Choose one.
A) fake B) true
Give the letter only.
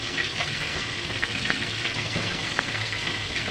A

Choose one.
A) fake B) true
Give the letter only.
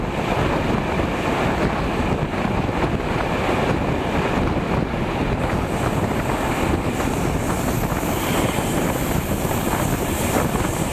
B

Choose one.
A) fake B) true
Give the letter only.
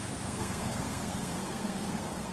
A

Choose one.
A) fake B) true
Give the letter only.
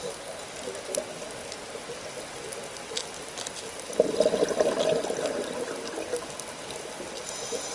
B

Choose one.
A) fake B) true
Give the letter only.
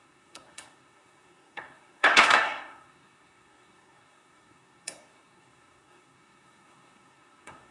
A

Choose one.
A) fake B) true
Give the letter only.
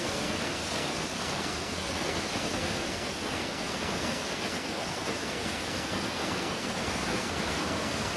A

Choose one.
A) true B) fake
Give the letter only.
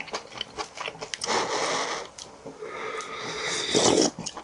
A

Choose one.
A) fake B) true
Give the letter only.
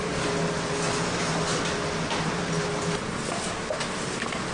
B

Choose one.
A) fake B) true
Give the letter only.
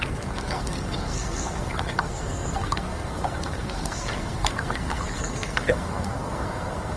A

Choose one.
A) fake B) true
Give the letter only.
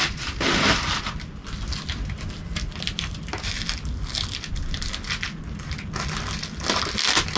B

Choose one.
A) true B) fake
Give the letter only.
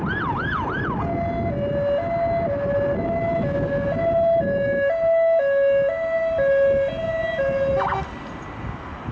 A